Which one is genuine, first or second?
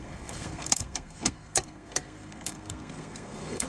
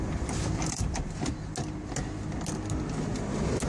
second